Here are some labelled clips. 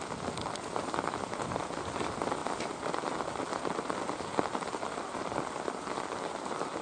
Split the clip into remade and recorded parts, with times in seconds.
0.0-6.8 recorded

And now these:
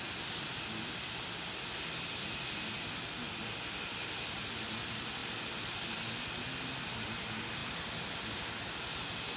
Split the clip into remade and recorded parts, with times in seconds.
0.0-9.4 recorded

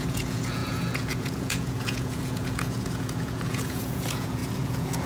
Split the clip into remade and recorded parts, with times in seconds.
0.0-5.1 remade

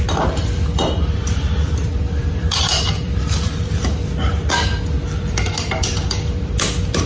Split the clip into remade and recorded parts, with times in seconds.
0.0-4.7 remade; 4.7-6.1 recorded; 6.1-7.1 remade

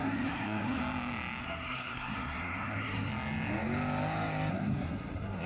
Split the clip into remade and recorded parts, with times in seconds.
0.0-0.8 remade; 0.8-1.4 recorded; 1.4-3.1 remade; 3.1-4.5 recorded; 4.5-5.5 remade